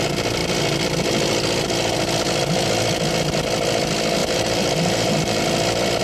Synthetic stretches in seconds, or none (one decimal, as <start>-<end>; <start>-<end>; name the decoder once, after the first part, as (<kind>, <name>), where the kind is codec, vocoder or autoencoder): 4.2-5.4 (vocoder, BigVGAN v2)